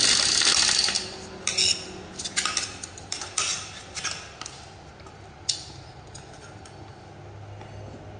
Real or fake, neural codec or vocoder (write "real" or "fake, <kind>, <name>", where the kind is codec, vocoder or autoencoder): real